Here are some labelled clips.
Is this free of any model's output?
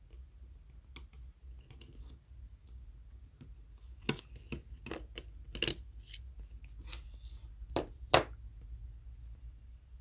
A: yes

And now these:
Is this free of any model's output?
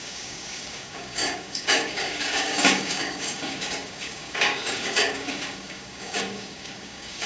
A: no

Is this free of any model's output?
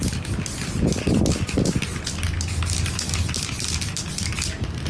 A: yes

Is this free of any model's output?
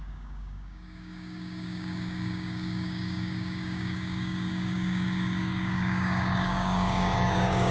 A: no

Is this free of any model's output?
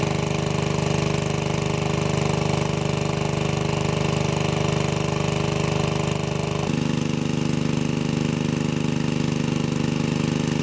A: yes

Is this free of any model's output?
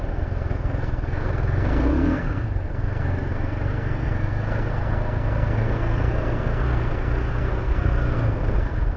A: no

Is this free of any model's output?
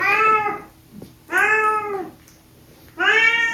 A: yes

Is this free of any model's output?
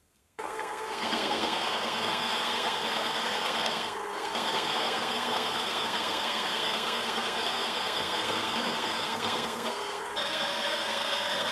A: no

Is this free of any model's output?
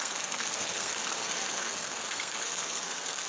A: no